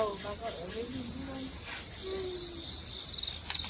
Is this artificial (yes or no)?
no